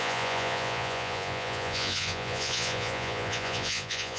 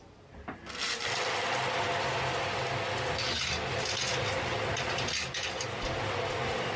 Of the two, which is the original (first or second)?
second